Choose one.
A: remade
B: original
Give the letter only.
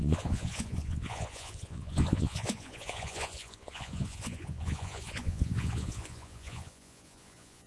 A